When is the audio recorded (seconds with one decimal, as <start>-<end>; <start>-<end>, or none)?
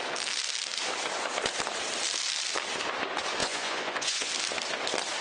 0.0-3.4; 4.3-5.2